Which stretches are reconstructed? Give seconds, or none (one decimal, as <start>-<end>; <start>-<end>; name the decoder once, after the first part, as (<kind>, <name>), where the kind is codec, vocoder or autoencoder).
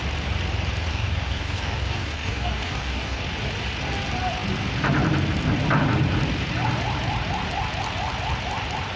0.9-3.2 (codec, DAC)